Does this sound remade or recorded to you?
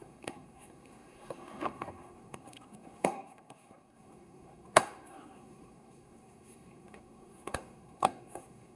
remade